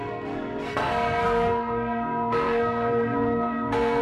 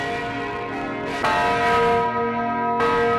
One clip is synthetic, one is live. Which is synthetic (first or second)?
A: first